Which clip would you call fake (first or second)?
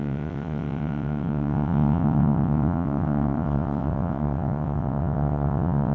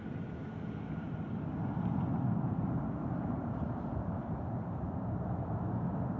first